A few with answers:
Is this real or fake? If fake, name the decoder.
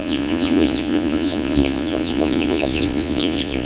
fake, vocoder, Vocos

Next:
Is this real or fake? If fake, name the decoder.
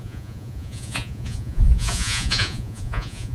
fake, vocoder, Vocos